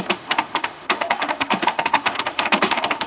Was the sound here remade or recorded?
remade